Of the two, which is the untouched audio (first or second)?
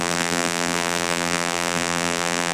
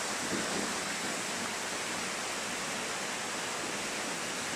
second